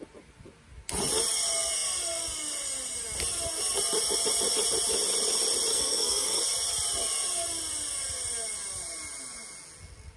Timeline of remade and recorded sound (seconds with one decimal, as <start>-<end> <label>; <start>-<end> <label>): 0.0-5.7 recorded; 5.7-6.4 remade; 6.4-10.2 recorded